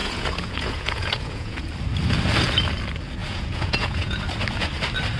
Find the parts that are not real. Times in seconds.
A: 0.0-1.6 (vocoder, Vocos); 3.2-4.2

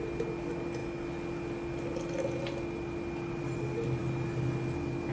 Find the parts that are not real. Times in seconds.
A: none

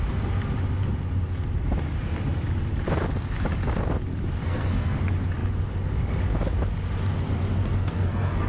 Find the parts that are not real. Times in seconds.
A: 4.4-5.0 (codec, SNAC); 7.6-8.5

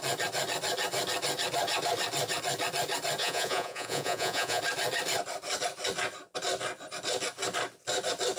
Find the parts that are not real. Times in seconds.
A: 3.2-4.6 (vocoder, Vocos)

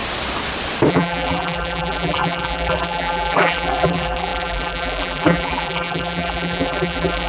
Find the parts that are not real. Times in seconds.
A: 0.9-7.3 (vocoder, BigVGAN v2)

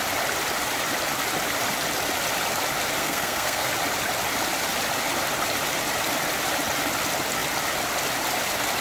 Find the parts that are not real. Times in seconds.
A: 3.0-3.7 (codec, SNAC)

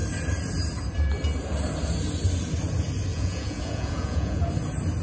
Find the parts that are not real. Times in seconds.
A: 3.1-4.4 (vocoder, Vocos)